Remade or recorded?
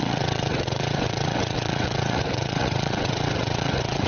remade